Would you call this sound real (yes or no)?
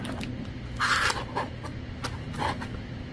yes